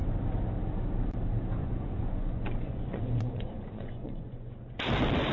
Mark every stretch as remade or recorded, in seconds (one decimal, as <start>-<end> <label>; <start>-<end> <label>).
0.0-1.6 recorded; 1.6-4.8 remade; 4.8-5.3 recorded